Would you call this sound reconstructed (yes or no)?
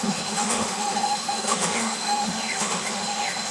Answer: yes